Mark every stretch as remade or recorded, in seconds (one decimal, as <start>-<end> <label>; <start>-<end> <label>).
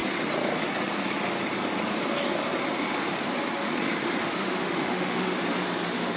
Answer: 0.0-4.0 recorded; 4.0-5.3 remade; 5.3-6.2 recorded